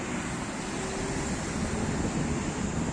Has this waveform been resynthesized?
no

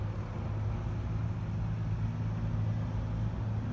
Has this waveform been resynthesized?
no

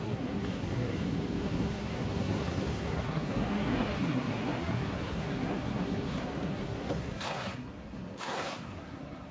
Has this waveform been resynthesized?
yes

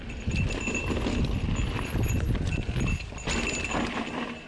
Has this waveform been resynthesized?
no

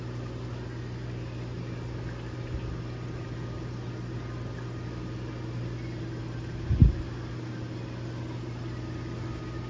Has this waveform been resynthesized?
no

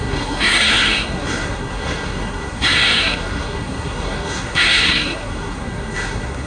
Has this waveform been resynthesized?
yes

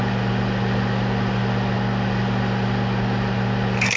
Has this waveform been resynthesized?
no